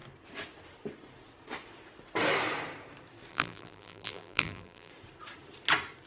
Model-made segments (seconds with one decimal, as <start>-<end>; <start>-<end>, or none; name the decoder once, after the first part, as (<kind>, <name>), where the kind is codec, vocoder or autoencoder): 3.3-4.9 (vocoder, BigVGAN v2)